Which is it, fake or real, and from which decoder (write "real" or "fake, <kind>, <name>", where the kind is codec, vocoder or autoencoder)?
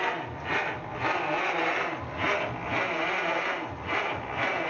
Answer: real